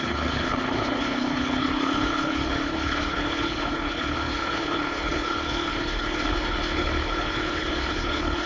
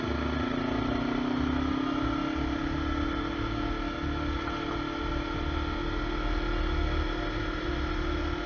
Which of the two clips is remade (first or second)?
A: first